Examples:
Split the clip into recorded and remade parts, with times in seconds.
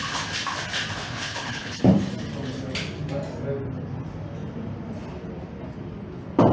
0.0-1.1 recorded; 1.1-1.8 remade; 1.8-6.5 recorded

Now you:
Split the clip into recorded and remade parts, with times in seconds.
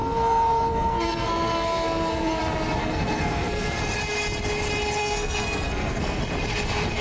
0.0-2.4 remade; 2.4-2.8 recorded; 2.8-3.8 remade; 3.8-5.0 recorded; 5.0-6.2 remade; 6.2-7.0 recorded